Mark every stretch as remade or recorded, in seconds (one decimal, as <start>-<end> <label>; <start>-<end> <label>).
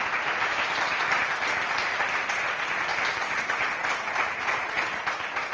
0.0-2.9 recorded; 2.9-3.4 remade; 3.4-5.5 recorded